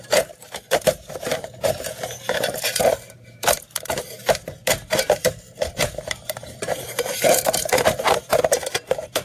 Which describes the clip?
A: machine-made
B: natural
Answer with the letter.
A